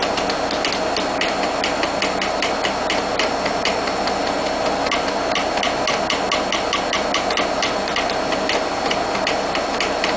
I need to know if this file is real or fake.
real